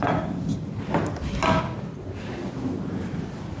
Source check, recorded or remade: recorded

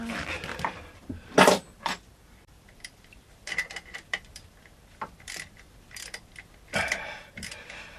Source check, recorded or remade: remade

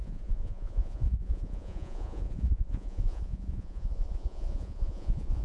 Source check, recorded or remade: remade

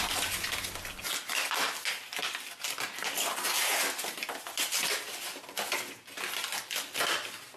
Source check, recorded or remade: recorded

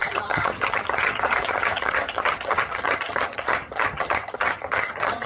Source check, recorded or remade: remade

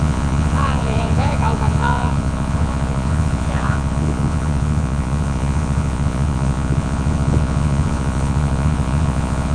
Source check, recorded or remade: remade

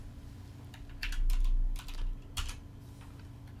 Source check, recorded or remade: recorded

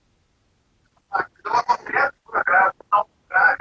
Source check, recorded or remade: recorded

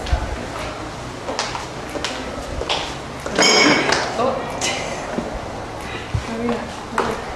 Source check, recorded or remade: recorded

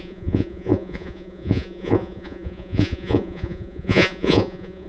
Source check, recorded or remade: remade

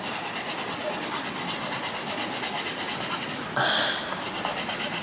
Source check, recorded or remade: recorded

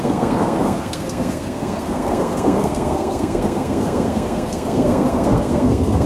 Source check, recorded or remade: remade